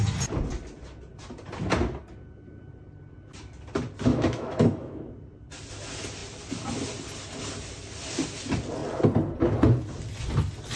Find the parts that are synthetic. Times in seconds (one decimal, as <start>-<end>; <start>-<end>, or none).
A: 4.1-5.1